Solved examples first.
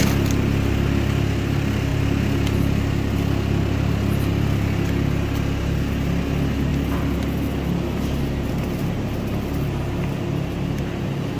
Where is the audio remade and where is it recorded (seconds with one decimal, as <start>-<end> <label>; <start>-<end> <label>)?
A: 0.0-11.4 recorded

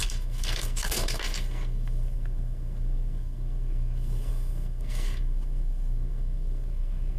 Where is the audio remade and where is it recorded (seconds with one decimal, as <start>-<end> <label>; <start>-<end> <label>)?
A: 0.0-7.2 remade

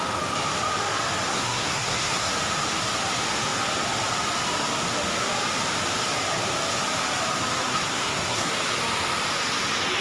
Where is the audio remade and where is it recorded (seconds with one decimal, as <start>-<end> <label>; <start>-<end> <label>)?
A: 0.0-1.3 recorded; 1.3-2.3 remade; 2.3-7.7 recorded; 7.7-8.5 remade; 8.5-10.0 recorded